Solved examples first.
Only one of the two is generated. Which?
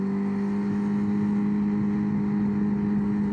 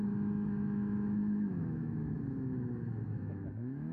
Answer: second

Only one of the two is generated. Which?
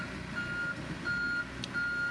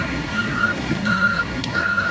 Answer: second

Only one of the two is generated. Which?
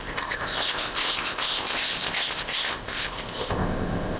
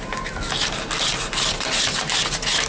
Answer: first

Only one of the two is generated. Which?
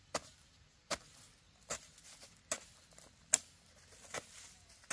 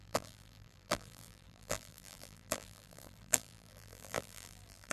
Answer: second